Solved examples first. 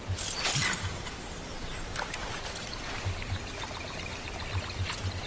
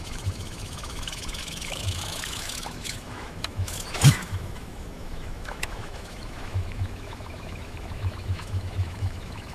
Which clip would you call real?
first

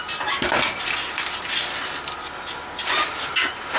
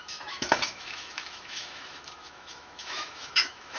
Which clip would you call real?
first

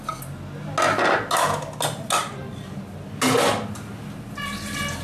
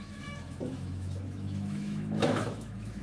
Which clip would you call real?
first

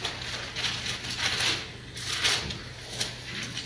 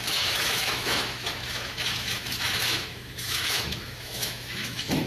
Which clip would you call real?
first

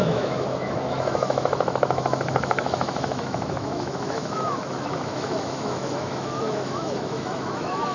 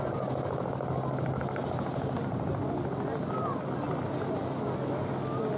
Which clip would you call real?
second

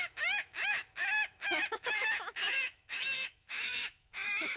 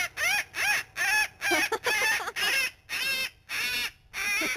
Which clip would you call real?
second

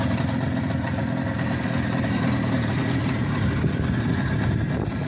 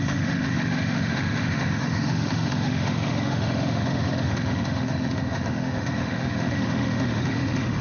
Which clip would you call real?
first